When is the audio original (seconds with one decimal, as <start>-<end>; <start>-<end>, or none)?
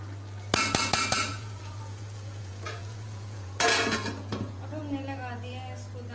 0.0-1.3; 4.8-6.1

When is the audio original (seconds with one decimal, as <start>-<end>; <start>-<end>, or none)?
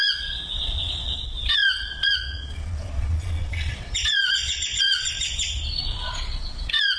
none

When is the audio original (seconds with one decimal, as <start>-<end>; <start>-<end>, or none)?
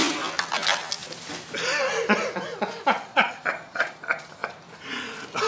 0.0-3.1; 3.9-5.5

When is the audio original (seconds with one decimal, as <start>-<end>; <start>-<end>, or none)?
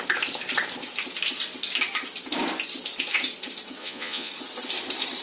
0.0-3.8; 4.3-5.2